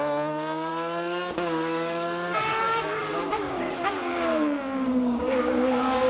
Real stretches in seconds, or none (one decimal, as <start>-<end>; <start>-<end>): none